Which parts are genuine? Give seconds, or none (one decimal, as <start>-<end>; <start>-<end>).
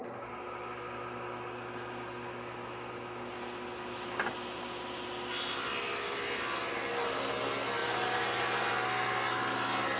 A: 0.0-7.8; 8.7-10.0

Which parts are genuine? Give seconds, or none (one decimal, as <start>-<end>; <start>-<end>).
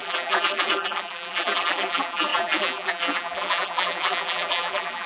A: none